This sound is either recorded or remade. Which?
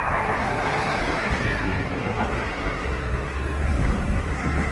remade